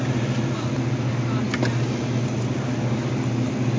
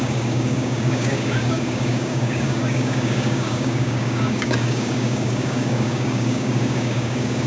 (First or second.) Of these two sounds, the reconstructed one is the second